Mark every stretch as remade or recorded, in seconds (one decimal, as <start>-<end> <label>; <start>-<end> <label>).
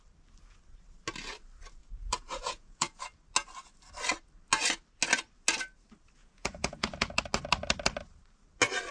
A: 0.0-1.8 recorded; 1.8-3.0 remade; 3.0-6.2 recorded; 6.2-7.1 remade; 7.1-8.9 recorded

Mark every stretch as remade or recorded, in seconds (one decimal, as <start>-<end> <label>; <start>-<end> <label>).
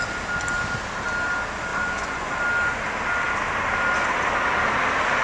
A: 0.0-1.7 recorded; 1.7-2.3 remade; 2.3-5.2 recorded